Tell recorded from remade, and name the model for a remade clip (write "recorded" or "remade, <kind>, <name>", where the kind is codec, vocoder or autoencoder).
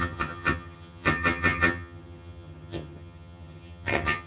remade, vocoder, HiFi-GAN